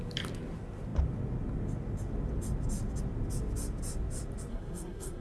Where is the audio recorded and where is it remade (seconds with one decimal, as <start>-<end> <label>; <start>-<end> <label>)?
0.0-4.5 recorded; 4.5-5.2 remade